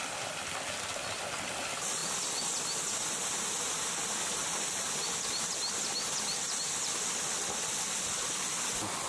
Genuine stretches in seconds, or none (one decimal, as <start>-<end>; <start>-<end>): 0.0-9.1